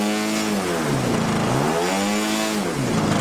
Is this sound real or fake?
real